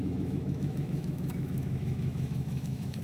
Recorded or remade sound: remade